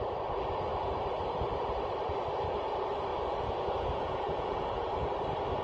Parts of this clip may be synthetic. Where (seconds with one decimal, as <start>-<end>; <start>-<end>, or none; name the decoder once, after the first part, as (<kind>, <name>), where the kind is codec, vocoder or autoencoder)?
3.1-5.0 (vocoder, Vocos)

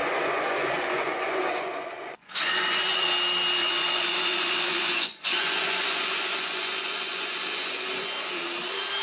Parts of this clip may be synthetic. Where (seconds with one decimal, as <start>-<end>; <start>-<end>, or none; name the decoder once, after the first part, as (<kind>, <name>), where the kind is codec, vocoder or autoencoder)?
0.0-3.1 (vocoder, Vocos); 3.6-8.3

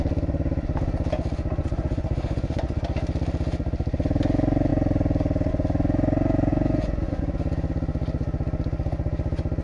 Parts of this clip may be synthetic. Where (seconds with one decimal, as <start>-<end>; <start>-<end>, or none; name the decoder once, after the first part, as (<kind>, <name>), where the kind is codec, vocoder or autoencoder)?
1.6-2.8 (vocoder, Vocos); 6.5-7.2

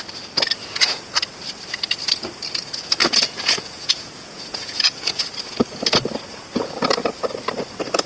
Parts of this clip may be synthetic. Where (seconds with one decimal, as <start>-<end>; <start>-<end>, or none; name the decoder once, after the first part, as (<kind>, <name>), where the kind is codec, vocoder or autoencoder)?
0.6-1.2 (vocoder, Vocos); 3.0-5.2

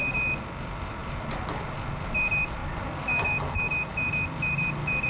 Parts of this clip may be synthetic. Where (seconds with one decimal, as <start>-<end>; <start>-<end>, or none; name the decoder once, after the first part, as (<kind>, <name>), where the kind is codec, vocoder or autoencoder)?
none